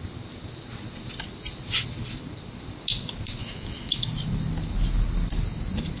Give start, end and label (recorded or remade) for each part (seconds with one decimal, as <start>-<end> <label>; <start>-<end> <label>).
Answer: 0.0-3.4 recorded; 3.4-4.1 remade; 4.1-6.0 recorded